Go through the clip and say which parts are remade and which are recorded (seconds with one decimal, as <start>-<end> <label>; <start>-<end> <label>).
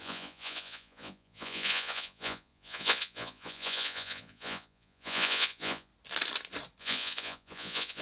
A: 0.0-5.9 remade; 5.9-6.8 recorded; 6.8-8.0 remade